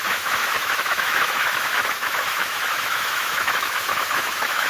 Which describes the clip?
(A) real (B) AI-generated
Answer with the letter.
B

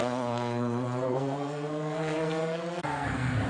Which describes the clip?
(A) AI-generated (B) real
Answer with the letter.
A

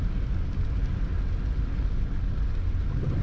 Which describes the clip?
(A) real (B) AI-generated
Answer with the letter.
A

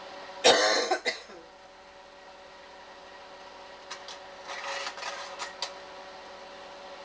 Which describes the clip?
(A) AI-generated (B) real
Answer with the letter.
B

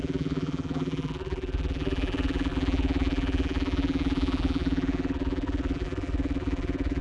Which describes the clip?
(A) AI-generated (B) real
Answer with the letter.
A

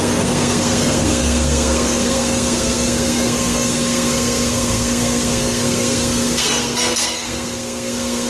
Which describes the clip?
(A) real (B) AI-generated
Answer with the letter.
B